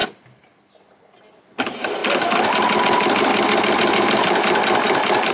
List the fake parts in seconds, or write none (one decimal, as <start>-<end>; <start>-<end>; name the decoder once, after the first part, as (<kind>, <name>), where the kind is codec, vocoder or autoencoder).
2.0-2.8 (vocoder, BigVGAN v2); 3.3-5.3